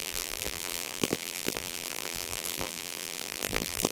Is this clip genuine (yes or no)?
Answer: no